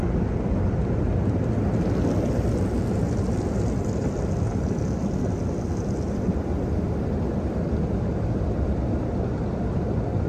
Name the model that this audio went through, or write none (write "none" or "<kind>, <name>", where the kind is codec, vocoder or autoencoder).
none